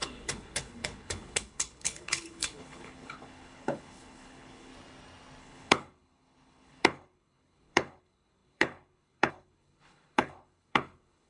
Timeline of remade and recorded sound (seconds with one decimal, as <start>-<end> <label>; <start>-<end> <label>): 0.0-4.7 remade; 4.7-5.4 recorded; 5.4-11.3 remade